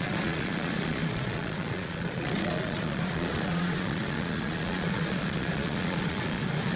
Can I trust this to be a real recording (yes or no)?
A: no